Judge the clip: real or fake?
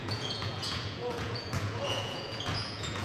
fake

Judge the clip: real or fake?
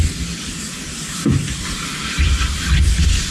real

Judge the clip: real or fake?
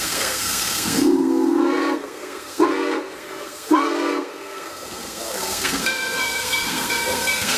fake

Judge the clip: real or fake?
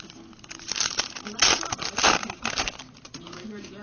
fake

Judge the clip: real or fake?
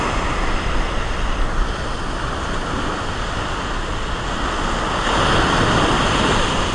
real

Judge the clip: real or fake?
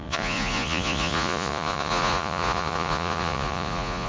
fake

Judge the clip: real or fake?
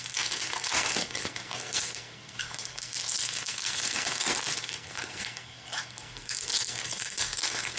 fake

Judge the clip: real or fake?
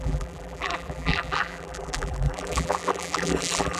fake